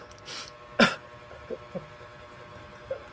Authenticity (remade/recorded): recorded